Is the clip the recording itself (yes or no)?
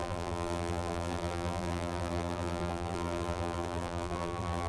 no